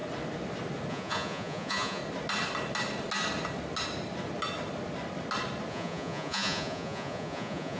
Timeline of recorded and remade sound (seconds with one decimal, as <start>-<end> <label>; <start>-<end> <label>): 0.0-0.9 recorded; 0.9-2.0 remade; 2.0-5.7 recorded; 5.7-7.8 remade